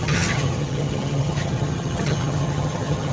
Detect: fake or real fake